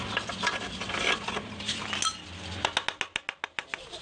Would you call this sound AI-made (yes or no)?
no